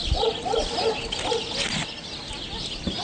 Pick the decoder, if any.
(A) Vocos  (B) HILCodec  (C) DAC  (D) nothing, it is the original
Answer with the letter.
D